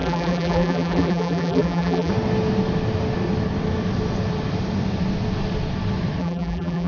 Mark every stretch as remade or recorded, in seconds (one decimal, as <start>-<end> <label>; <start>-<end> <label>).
0.0-2.1 remade; 2.1-6.2 recorded; 6.2-6.9 remade